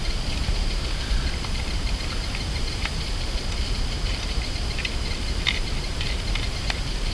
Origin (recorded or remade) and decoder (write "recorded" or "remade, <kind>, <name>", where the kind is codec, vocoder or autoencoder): remade, vocoder, BigVGAN v2